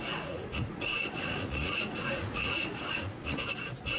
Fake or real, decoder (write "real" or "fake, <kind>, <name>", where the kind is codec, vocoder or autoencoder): fake, vocoder, Vocos